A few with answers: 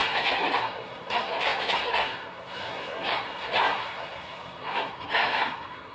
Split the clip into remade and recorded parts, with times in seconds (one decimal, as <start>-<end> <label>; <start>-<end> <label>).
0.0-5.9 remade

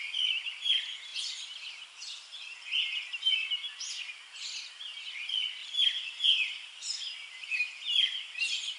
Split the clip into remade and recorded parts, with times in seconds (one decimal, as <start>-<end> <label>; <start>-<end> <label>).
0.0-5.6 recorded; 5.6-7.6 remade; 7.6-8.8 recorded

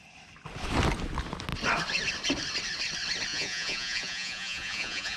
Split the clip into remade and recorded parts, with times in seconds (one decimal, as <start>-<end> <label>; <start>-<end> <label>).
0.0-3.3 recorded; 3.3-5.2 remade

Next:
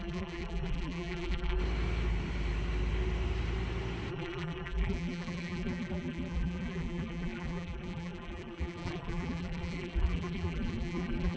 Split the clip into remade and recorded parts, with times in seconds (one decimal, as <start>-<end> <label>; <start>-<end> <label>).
0.0-1.6 remade; 1.6-4.1 recorded; 4.1-11.4 remade